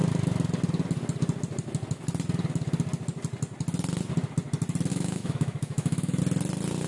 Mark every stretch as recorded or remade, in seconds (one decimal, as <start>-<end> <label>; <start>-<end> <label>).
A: 0.0-4.9 recorded; 4.9-6.2 remade; 6.2-6.9 recorded